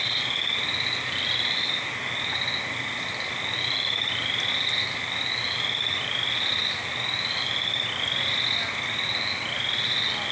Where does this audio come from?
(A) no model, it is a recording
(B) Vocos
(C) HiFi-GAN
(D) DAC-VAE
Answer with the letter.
A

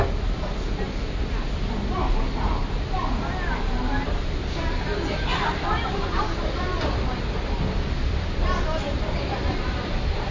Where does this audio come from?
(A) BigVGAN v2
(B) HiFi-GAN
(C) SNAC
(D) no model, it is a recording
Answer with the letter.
D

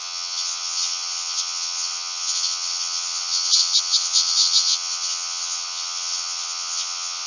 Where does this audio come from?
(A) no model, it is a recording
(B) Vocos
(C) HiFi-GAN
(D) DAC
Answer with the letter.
C